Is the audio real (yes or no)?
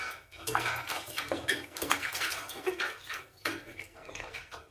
no